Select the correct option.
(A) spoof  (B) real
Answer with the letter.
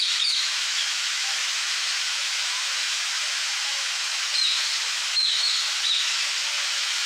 A